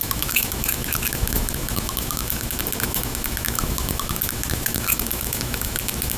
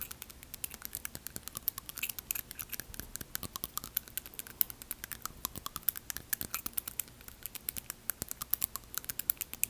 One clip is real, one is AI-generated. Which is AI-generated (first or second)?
first